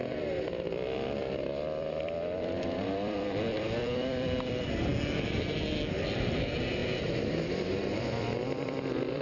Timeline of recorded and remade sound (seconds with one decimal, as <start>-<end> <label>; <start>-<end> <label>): 0.0-4.9 remade; 4.9-5.9 recorded; 5.9-9.2 remade